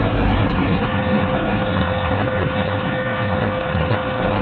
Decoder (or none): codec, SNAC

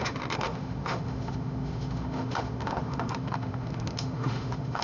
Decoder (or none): autoencoder, DAC-VAE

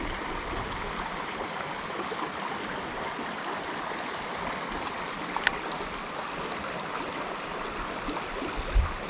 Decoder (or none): none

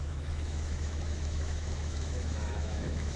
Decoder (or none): autoencoder, DAC-VAE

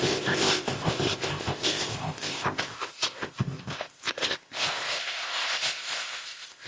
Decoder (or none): codec, ZipCodec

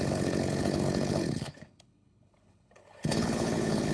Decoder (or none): codec, HILCodec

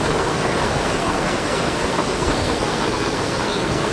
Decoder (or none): codec, SNAC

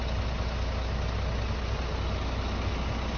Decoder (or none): none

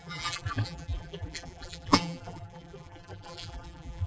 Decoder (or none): vocoder, BigVGAN v2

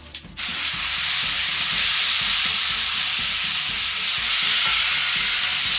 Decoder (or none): vocoder, BigVGAN v2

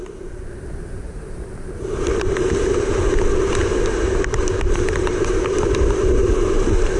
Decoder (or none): vocoder, BigVGAN v2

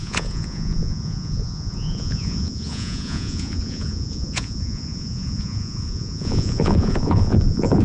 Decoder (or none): vocoder, Vocos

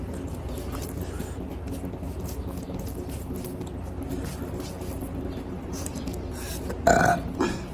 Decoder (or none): none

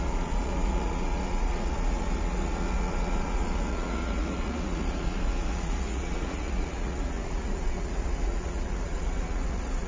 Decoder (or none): vocoder, Vocos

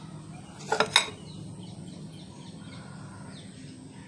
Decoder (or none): none